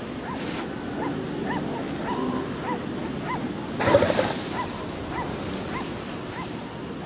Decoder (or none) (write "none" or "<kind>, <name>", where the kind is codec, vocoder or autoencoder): none